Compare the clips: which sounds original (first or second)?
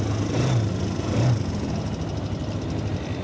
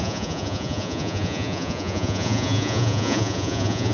first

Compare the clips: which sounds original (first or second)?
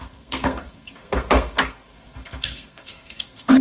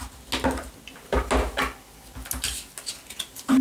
second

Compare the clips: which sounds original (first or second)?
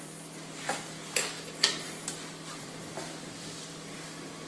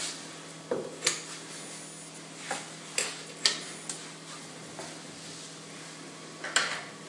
second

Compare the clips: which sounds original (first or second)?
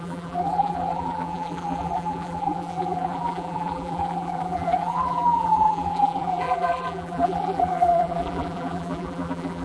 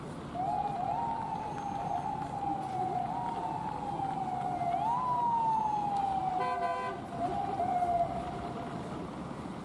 second